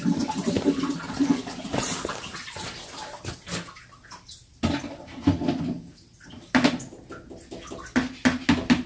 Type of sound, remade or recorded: recorded